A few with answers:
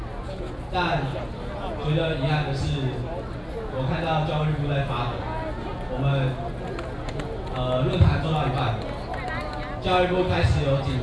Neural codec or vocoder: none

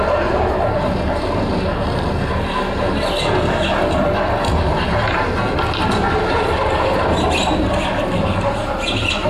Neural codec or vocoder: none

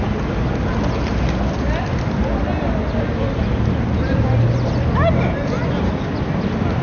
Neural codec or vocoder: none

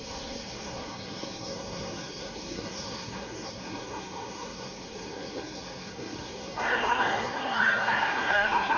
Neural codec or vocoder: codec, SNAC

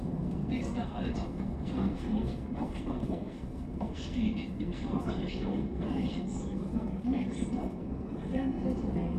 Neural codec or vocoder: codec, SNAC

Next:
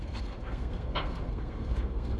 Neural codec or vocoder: codec, SNAC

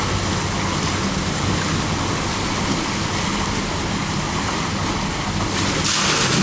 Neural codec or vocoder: none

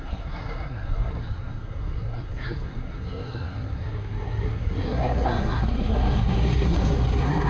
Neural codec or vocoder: codec, SNAC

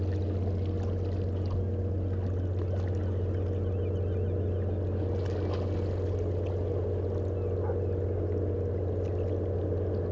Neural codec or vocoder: none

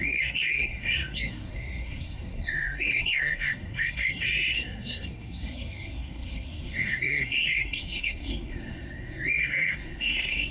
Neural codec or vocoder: codec, SNAC